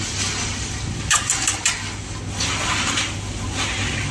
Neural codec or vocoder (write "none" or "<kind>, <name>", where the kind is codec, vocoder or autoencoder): none